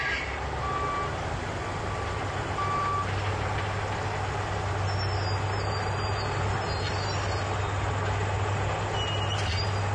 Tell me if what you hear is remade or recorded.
recorded